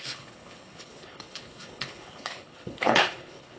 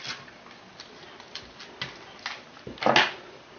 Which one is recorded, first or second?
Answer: second